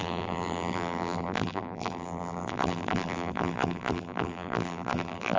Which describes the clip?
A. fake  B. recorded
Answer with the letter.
A